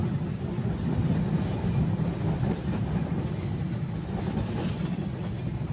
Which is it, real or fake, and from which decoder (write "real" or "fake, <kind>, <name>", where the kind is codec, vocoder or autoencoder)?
real